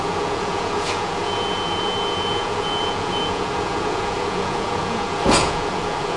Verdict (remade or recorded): remade